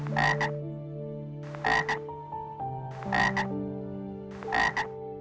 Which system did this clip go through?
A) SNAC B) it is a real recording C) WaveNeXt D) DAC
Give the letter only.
B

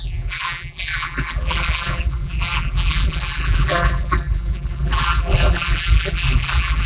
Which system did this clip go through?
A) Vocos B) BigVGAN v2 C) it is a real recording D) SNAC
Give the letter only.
B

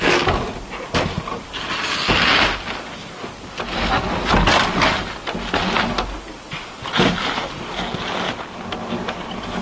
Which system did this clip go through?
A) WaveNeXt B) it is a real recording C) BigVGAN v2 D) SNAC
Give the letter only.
B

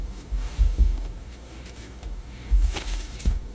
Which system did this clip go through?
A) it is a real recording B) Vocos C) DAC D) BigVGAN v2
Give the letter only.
C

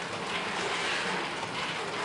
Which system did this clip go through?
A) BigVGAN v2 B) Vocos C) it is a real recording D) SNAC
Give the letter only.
C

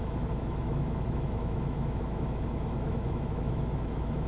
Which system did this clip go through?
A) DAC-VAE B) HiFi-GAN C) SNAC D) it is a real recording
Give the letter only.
A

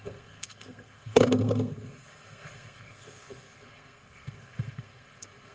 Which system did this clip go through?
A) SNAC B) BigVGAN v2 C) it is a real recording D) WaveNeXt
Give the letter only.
A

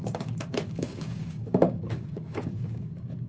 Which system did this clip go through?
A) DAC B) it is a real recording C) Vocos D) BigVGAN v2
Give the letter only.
A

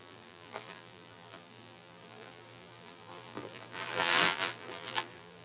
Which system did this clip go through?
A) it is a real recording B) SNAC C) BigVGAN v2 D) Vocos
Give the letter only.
C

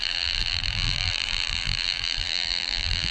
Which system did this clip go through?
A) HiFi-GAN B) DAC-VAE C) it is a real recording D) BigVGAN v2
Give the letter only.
D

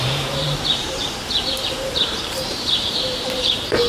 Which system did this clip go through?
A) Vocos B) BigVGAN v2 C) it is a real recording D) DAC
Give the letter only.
B